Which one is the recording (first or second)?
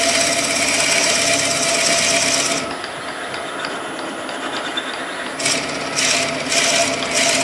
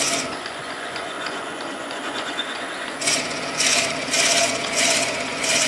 first